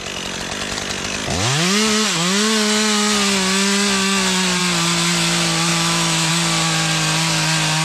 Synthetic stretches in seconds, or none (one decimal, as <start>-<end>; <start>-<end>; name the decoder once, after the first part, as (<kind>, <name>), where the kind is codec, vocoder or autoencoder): 5.7-6.3 (autoencoder, DAC-VAE)